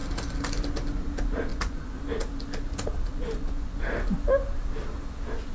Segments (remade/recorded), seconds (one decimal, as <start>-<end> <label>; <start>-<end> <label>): 0.0-1.5 recorded; 1.5-2.0 remade; 2.0-3.1 recorded; 3.1-3.8 remade; 3.8-5.5 recorded